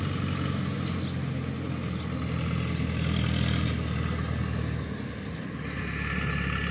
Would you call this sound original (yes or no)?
yes